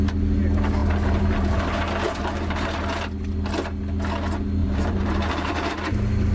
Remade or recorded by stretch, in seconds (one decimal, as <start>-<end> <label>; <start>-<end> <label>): 0.0-0.8 recorded; 0.8-2.8 remade; 2.8-4.6 recorded; 4.6-5.7 remade; 5.7-6.3 recorded